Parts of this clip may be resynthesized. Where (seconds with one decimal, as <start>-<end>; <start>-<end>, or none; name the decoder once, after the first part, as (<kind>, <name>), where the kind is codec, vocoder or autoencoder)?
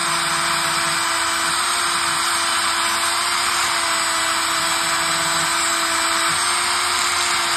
none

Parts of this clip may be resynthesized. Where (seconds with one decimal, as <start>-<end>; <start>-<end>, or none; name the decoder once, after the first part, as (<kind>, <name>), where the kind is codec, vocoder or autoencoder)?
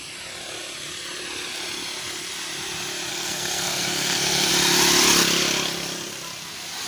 3.1-4.5 (codec, SNAC)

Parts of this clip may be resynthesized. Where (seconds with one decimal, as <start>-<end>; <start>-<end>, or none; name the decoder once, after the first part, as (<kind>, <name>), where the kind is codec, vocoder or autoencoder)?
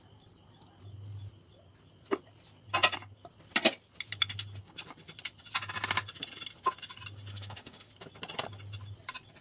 7.3-7.9 (autoencoder, DAC-VAE)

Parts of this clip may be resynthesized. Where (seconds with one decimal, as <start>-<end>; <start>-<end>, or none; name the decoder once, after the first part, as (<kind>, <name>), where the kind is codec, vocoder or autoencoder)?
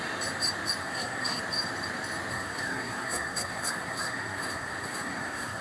0.8-1.4 (codec, SNAC); 2.3-5.6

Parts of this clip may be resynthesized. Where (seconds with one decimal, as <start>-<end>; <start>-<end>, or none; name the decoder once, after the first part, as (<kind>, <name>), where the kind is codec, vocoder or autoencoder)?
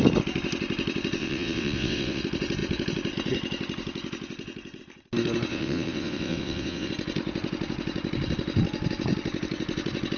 1.2-2.2 (vocoder, WaveNeXt); 5.5-6.9